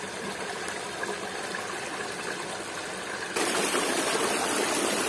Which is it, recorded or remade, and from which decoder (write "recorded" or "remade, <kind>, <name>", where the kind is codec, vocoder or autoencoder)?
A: remade, vocoder, BigVGAN v2